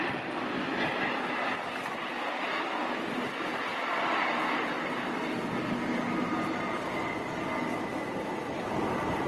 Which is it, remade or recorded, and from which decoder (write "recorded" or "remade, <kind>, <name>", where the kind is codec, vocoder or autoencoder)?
recorded